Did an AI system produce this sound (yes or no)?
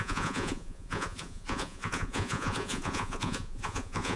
yes